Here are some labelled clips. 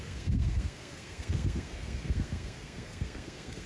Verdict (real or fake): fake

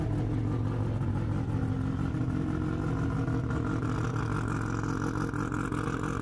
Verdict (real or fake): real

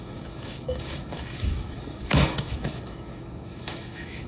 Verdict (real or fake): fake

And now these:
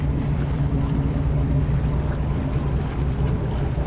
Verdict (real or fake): real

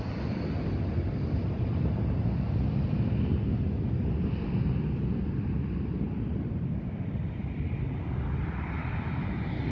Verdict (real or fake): real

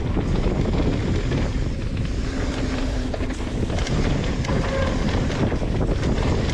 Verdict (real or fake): real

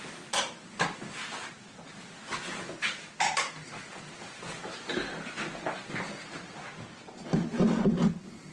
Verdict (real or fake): real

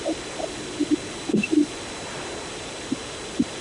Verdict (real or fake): real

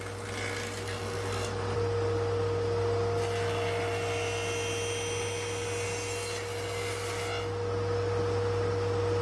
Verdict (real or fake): real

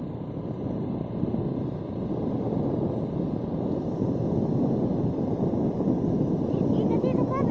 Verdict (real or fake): real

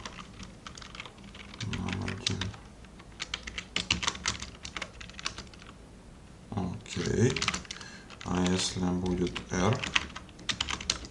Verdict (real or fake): real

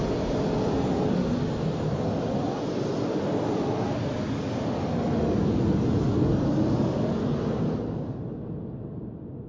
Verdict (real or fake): real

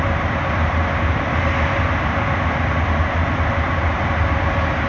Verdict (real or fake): real